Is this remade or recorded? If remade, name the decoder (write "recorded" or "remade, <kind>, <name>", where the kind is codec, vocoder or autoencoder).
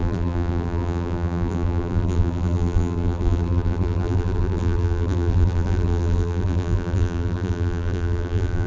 remade, vocoder, BigVGAN v2